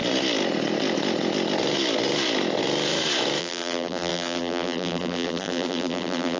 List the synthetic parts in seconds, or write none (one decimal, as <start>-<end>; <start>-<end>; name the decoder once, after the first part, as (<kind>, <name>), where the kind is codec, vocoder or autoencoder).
3.4-6.4 (vocoder, BigVGAN v2)